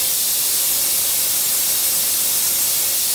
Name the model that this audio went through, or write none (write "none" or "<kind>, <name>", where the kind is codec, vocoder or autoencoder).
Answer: none